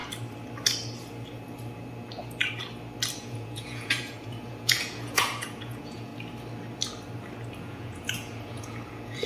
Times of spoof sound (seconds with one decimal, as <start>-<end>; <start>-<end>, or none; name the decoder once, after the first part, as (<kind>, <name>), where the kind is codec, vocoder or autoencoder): 3.2-6.1 (vocoder, Vocos); 7.6-9.3